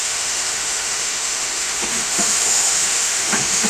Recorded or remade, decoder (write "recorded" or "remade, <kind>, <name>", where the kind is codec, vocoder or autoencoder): remade, autoencoder, DAC-VAE